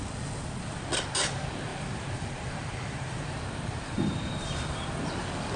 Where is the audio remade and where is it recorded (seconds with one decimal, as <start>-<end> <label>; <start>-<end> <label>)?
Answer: 0.0-1.7 recorded; 1.7-5.1 remade; 5.1-5.6 recorded